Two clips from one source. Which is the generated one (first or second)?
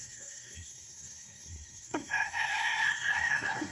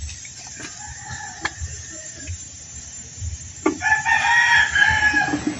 first